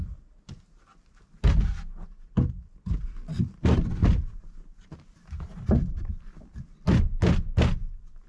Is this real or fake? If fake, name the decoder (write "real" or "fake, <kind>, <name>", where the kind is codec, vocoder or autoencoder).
real